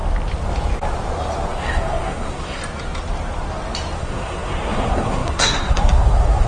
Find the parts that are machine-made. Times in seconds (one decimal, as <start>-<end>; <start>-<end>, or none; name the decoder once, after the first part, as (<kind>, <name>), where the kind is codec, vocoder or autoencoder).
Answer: 1.5-2.6 (codec, SNAC); 4.0-6.5